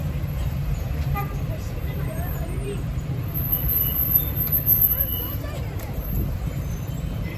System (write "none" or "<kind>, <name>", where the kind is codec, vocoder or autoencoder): vocoder, BigVGAN v2